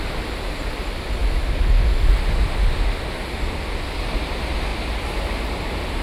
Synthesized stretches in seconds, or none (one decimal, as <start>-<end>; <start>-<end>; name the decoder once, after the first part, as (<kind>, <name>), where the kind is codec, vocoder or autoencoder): none